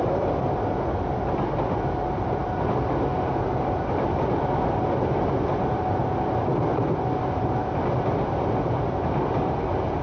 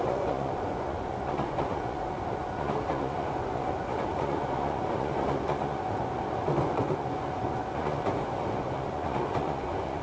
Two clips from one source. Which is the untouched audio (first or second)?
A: first